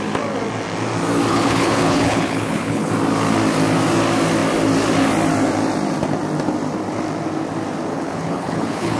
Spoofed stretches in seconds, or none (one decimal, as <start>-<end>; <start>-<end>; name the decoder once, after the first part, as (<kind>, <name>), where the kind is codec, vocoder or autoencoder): 1.3-2.9 (codec, HILCodec); 7.9-9.0